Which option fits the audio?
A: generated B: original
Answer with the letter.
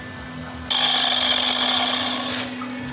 B